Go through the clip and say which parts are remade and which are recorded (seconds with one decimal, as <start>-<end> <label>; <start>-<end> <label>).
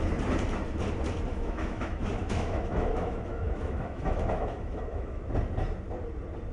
0.0-1.3 recorded; 1.3-5.2 remade; 5.2-6.5 recorded